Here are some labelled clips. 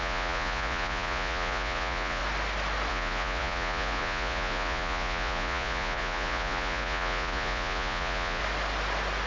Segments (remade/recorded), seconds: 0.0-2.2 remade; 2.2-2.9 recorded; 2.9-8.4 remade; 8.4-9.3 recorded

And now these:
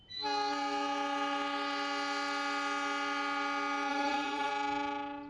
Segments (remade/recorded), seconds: 0.0-3.9 recorded; 3.9-4.5 remade; 4.5-5.3 recorded

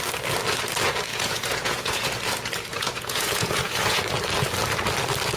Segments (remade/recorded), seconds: 0.0-1.1 recorded; 1.1-2.1 remade; 2.1-2.7 recorded; 2.7-4.0 remade; 4.0-5.4 recorded